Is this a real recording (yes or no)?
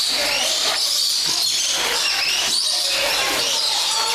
yes